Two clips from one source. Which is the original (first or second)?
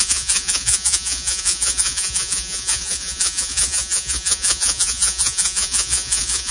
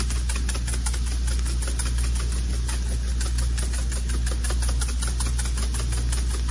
second